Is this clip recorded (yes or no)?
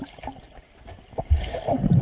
yes